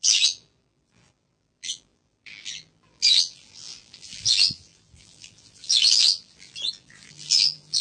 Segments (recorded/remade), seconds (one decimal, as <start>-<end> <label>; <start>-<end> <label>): 0.0-7.8 remade

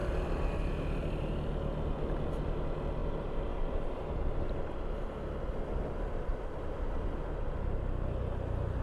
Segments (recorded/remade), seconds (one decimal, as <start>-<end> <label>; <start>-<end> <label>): 0.0-3.0 recorded; 3.0-4.2 remade; 4.2-6.3 recorded; 6.3-7.1 remade; 7.1-8.8 recorded

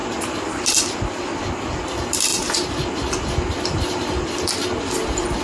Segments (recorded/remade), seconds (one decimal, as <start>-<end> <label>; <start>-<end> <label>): 0.0-5.4 recorded